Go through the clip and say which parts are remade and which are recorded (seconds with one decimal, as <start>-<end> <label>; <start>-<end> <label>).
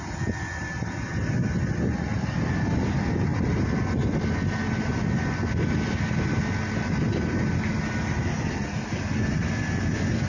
0.0-10.3 recorded